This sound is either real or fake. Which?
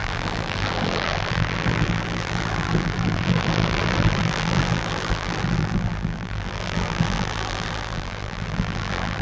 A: fake